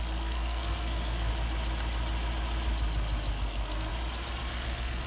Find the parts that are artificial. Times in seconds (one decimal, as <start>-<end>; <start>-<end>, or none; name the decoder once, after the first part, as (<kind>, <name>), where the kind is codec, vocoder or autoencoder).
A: 0.0-1.3 (codec, SNAC); 3.3-3.9; 4.5-5.1